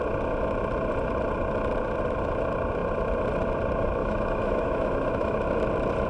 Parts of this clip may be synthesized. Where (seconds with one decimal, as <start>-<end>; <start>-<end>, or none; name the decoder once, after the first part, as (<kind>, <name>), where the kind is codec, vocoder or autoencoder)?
4.0-5.5 (autoencoder, DAC-VAE)